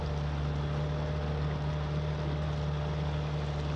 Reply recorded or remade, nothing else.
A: recorded